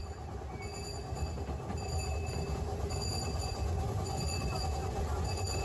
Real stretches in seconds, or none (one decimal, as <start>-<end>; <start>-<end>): 0.0-3.4

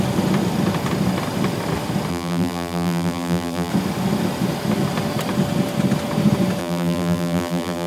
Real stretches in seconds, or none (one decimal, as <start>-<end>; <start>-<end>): 0.0-2.1; 3.7-6.6

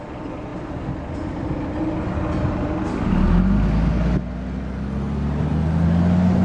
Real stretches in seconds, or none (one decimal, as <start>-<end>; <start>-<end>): 0.0-6.4

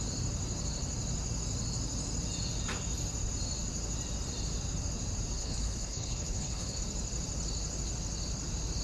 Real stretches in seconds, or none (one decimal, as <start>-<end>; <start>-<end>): 0.0-5.4; 6.8-8.8

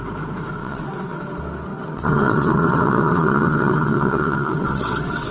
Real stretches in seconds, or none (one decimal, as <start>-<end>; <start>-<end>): 0.0-0.6; 1.2-1.7

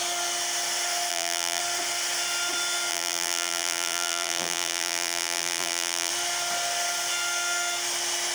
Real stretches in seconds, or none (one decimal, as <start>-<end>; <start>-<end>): 0.0-1.1; 1.6-2.9; 6.1-8.3

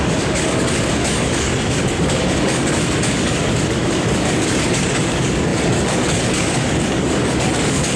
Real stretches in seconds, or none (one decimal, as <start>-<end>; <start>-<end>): 1.5-2.0